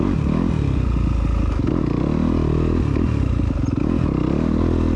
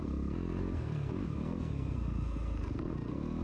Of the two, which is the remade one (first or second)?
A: second